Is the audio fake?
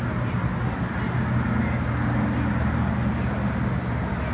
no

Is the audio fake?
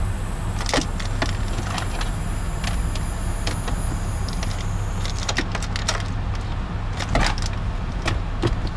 no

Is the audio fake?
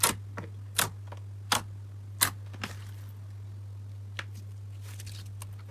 no